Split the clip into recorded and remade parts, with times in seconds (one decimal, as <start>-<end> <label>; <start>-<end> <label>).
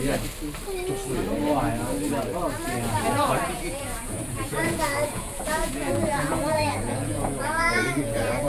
0.0-3.5 recorded; 3.5-8.5 remade